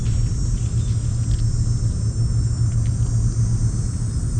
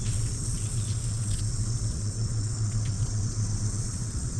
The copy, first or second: second